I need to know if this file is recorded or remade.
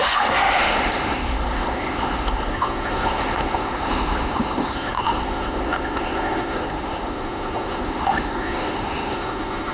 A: remade